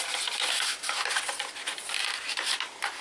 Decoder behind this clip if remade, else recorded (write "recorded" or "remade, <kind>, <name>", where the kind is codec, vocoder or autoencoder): recorded